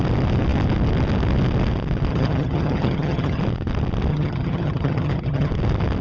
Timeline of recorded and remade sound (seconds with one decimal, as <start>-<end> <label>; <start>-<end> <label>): 0.0-2.1 recorded; 2.1-3.4 remade; 3.4-4.1 recorded; 4.1-5.5 remade; 5.5-6.0 recorded